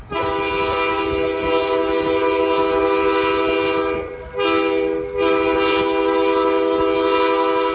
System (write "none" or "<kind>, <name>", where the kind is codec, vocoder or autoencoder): none